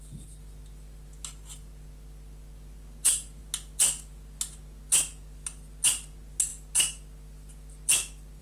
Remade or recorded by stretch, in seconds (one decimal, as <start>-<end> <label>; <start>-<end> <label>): 0.0-8.4 recorded